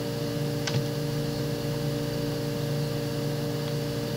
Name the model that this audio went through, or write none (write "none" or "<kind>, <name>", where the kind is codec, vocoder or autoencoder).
none